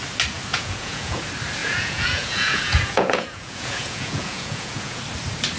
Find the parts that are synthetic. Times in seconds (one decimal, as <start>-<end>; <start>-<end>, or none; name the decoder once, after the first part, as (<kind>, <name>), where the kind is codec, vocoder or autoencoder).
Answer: 0.5-1.2 (vocoder, Vocos); 1.6-5.0